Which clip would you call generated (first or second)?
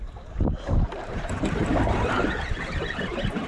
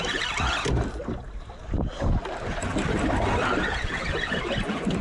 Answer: first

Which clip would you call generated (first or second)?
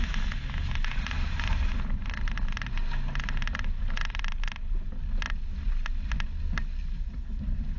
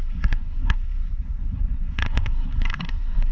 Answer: second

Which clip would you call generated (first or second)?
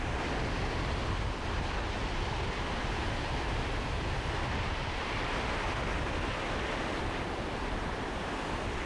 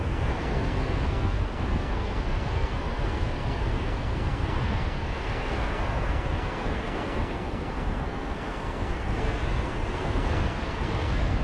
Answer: second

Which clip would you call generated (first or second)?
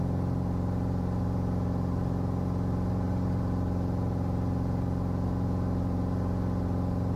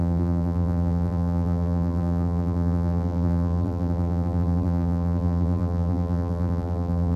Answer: second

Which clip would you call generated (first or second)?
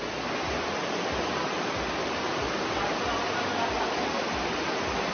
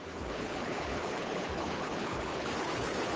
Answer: second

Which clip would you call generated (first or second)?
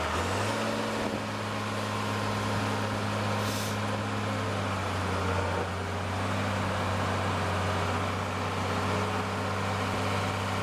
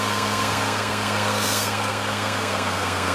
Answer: second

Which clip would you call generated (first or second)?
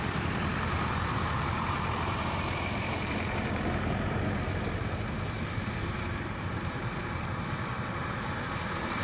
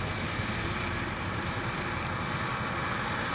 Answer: first